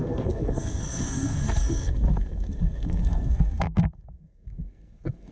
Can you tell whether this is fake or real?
fake